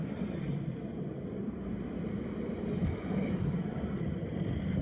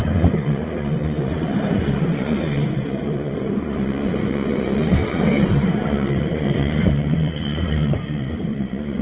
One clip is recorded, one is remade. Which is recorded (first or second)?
first